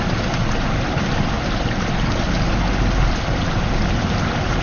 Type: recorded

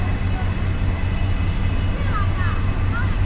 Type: recorded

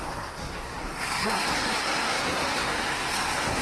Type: remade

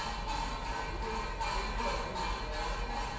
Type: recorded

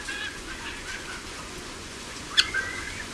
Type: remade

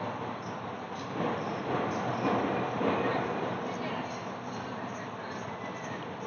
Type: recorded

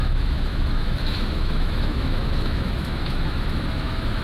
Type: remade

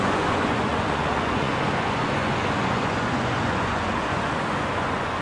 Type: remade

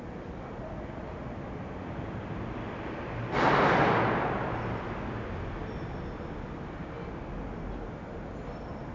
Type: recorded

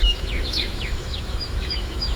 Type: remade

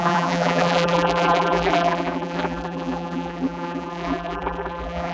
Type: remade